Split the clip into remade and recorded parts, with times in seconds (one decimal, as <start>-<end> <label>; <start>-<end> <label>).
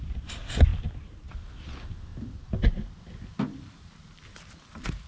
0.0-5.1 recorded